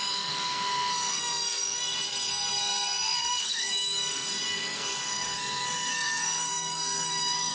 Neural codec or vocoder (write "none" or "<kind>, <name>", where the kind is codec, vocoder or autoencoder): codec, SNAC